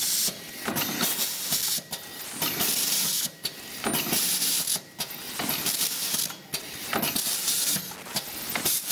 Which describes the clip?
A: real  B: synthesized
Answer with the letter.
A